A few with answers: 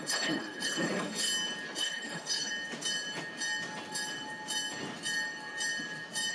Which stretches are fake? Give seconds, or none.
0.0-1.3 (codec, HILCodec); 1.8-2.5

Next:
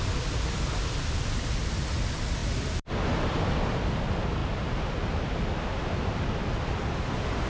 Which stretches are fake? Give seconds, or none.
2.4-4.0 (vocoder, BigVGAN v2)